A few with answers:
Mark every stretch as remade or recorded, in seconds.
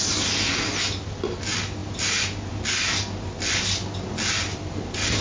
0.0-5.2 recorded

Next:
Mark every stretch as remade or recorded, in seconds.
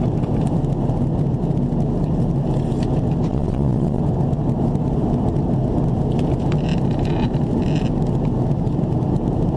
0.0-3.3 recorded; 3.3-4.0 remade; 4.0-9.6 recorded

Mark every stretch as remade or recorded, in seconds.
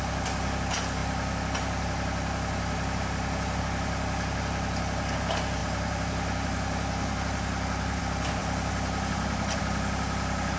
0.0-5.6 recorded; 5.6-8.0 remade; 8.0-8.4 recorded; 8.4-9.6 remade; 9.6-10.6 recorded